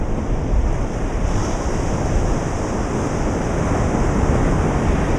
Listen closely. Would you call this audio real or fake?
real